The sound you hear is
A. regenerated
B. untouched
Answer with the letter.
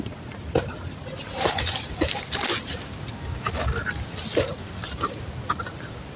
B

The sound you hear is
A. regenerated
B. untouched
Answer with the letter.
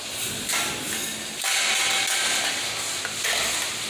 B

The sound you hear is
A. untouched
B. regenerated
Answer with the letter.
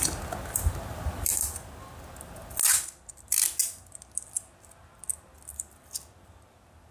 A